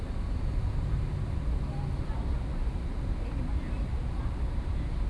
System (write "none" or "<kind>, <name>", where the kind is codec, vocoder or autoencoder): none